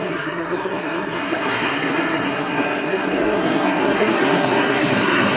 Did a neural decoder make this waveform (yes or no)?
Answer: yes